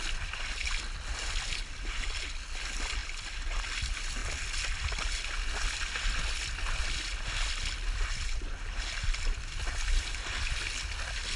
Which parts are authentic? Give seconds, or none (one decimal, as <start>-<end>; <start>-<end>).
0.0-11.4